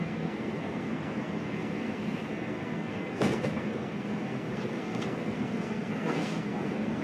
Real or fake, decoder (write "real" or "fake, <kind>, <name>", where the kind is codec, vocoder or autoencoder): fake, codec, SNAC